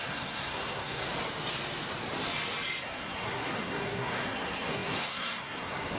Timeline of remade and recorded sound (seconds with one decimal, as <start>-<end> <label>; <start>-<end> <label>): 0.0-1.1 remade; 1.1-2.8 recorded; 2.8-6.0 remade